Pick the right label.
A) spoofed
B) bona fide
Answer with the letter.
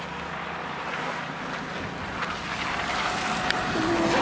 B